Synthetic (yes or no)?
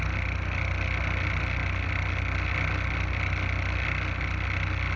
no